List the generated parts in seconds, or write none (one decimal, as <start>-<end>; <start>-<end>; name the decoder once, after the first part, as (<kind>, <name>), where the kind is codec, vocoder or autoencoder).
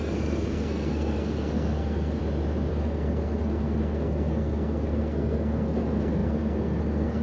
0.0-2.2 (codec, SNAC); 2.7-7.2